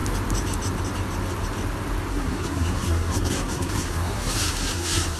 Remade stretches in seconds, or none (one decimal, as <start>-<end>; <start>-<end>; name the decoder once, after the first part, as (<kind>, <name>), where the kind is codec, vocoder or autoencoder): 2.1-5.2 (codec, SNAC)